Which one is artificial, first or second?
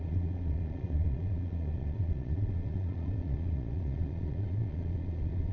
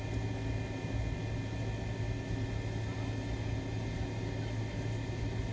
first